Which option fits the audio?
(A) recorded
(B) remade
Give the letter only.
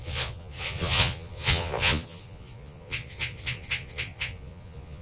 B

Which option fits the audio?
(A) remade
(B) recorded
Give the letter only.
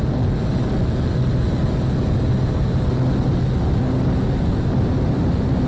B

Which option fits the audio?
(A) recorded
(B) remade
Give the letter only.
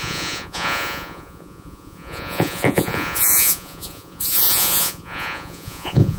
B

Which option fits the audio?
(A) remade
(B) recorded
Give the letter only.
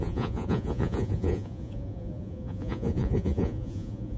A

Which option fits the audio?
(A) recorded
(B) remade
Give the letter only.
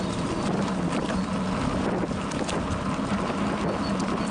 A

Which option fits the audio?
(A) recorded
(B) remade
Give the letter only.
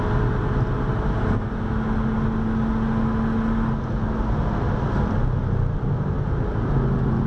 A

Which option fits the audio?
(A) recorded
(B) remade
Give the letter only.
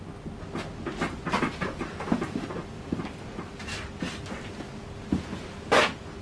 A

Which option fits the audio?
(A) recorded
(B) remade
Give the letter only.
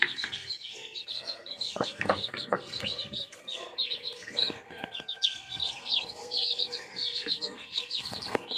B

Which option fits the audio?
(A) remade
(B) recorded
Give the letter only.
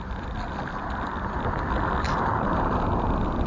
A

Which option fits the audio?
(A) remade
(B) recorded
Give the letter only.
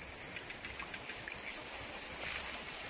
B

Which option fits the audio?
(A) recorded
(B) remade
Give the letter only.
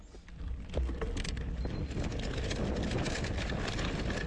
A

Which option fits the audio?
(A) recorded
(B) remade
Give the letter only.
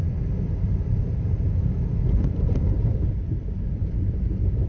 A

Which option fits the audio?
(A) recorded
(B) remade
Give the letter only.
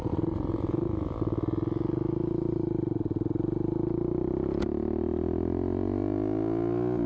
A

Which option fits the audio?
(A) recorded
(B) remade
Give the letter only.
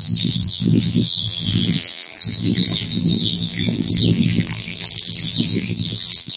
B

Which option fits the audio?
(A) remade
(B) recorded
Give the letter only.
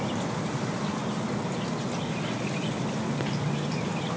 B